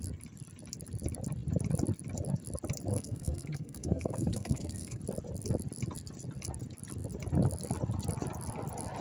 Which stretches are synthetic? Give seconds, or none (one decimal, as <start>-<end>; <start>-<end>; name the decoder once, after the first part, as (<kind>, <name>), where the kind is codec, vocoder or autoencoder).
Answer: 2.9-5.0 (codec, SNAC)